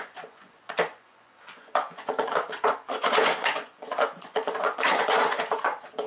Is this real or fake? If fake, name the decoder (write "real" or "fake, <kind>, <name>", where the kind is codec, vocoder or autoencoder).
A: fake, vocoder, Vocos